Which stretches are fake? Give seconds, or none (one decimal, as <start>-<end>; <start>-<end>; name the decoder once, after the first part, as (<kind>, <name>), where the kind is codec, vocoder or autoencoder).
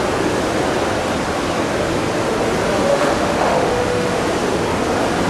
2.9-4.2 (autoencoder, DAC-VAE)